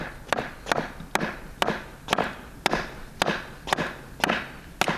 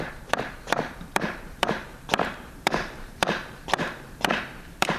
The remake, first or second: second